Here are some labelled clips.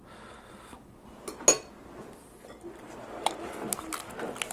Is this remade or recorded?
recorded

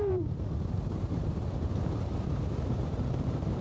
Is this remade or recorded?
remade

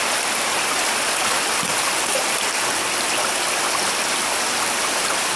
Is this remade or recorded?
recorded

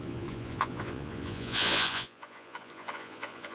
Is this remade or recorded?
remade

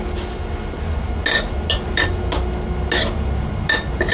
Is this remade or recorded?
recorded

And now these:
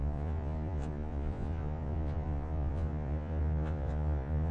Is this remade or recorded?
remade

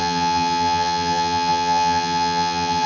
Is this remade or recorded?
remade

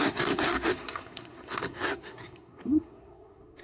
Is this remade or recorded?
remade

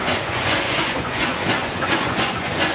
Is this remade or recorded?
remade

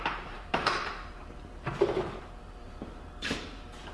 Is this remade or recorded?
remade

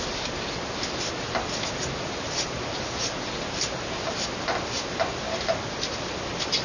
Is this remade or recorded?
recorded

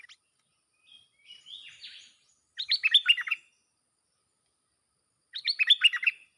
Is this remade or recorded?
recorded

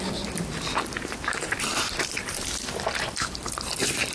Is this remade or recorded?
remade